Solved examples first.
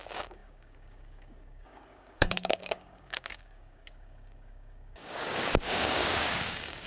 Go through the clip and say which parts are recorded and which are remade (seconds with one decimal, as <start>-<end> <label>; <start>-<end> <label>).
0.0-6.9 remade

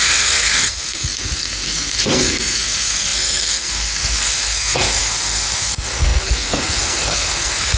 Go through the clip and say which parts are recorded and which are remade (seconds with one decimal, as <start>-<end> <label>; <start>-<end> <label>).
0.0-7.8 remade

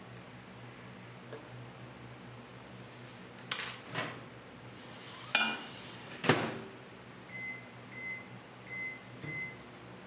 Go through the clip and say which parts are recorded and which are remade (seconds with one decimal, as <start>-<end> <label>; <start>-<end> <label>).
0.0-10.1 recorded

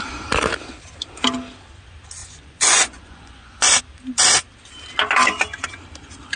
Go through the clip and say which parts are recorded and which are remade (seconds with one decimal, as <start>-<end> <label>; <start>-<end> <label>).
0.0-2.2 recorded; 2.2-3.8 remade; 3.8-6.4 recorded

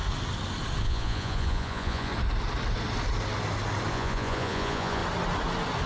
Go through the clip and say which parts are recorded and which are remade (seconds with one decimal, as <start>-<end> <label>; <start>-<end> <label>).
0.0-0.8 recorded; 0.8-2.1 remade; 2.1-3.9 recorded; 3.9-5.0 remade; 5.0-5.9 recorded

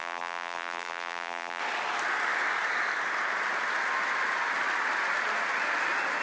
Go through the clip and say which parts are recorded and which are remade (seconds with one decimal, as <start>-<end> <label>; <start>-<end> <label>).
0.0-1.6 remade; 1.6-6.2 recorded

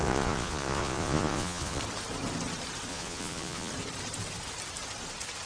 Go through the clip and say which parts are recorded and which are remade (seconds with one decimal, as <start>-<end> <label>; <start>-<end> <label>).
0.0-1.8 remade; 1.8-2.9 recorded; 2.9-3.7 remade; 3.7-5.5 recorded